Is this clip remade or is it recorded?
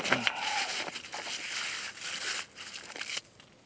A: recorded